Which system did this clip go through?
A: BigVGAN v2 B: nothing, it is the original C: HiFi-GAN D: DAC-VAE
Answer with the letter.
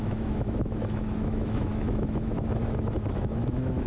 D